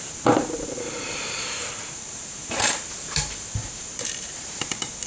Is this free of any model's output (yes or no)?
no